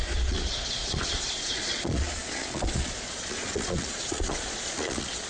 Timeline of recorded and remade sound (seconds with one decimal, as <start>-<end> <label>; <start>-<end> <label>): 0.0-5.3 remade